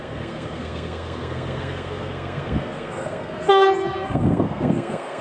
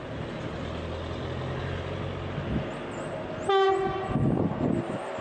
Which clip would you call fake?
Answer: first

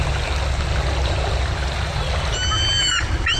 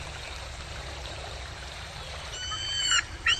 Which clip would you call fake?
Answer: second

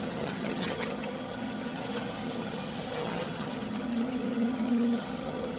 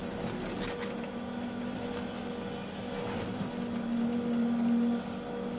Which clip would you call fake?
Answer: first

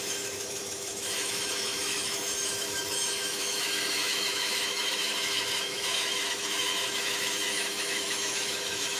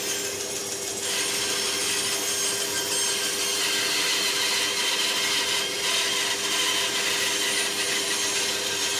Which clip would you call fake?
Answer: first